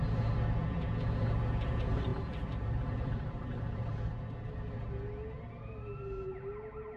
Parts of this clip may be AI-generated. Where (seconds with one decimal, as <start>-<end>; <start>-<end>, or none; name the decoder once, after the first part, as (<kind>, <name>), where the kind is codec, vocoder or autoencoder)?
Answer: 2.1-4.2 (vocoder, BigVGAN v2)